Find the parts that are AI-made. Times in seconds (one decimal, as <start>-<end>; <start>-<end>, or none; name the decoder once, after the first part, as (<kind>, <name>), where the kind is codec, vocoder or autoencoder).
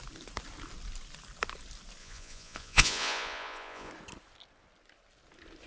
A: 2.0-3.9 (vocoder, Vocos)